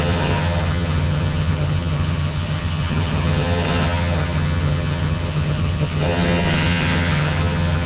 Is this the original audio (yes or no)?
no